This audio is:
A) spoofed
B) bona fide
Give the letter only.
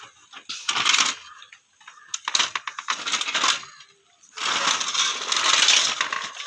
B